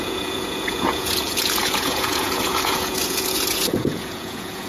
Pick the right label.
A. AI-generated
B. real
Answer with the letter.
A